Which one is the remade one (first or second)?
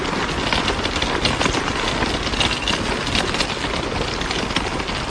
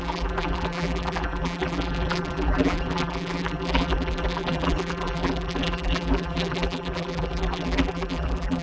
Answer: second